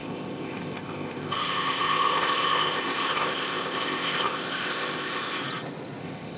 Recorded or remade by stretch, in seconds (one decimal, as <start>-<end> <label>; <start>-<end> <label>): 0.0-5.4 remade; 5.4-6.0 recorded; 6.0-6.4 remade

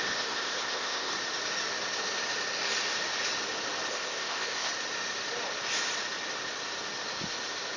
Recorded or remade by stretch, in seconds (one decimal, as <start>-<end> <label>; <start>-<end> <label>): 0.0-1.1 remade; 1.1-3.9 recorded; 3.9-4.7 remade; 4.7-7.8 recorded

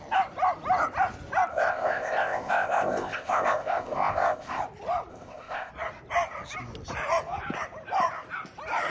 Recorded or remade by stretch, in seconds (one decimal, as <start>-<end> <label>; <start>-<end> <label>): 0.0-1.5 recorded; 1.5-4.6 remade; 4.6-5.1 recorded; 5.1-5.7 remade; 5.7-8.9 recorded

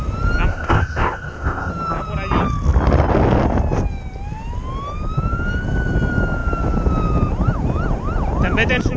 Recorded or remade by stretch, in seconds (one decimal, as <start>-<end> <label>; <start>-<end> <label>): 0.0-0.5 recorded; 0.5-1.7 remade; 1.7-9.0 recorded